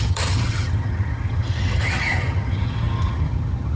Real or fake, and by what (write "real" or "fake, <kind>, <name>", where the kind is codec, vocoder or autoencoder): fake, vocoder, HiFi-GAN